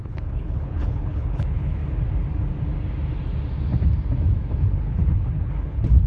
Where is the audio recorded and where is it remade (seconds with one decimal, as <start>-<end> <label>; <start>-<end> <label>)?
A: 0.0-1.8 remade; 1.8-4.6 recorded; 4.6-6.1 remade